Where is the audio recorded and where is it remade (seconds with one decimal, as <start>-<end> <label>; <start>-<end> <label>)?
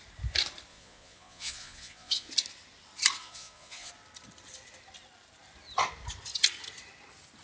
0.0-0.7 recorded; 0.7-2.3 remade; 2.3-3.2 recorded; 3.2-3.9 remade; 3.9-7.4 recorded